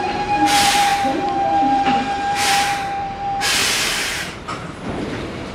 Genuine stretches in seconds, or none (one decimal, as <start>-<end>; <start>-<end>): none

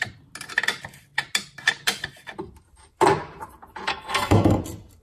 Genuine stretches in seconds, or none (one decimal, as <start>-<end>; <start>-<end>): 0.0-3.9; 4.6-5.0

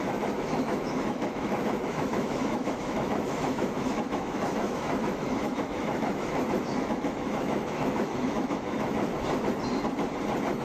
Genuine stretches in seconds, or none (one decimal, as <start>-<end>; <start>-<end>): 9.1-10.6

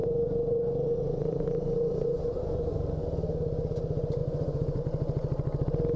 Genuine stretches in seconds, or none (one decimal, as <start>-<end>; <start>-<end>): 2.7-4.2; 4.8-6.0

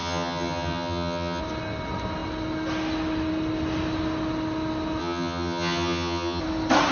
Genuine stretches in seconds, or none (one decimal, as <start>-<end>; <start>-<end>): 1.4-5.0; 6.4-6.9

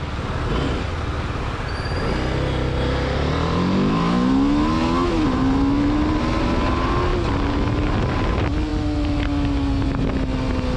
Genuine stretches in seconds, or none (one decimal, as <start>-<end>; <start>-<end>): 0.0-10.8

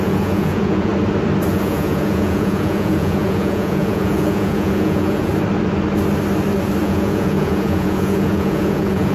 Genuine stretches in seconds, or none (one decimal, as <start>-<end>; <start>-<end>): 0.9-1.5; 5.3-6.8